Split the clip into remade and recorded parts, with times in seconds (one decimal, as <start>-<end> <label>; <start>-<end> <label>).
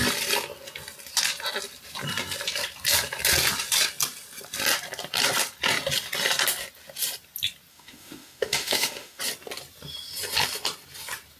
0.0-7.7 recorded; 7.7-9.2 remade; 9.2-11.4 recorded